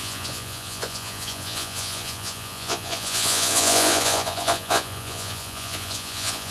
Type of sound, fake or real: fake